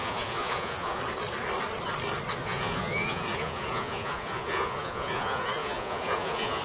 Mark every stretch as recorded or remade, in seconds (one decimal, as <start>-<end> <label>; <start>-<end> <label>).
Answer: 0.0-1.0 remade; 1.0-2.4 recorded; 2.4-6.6 remade